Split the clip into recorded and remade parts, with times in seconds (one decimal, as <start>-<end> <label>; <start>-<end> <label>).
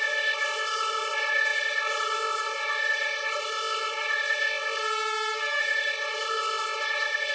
0.0-4.8 remade; 4.8-5.6 recorded; 5.6-7.3 remade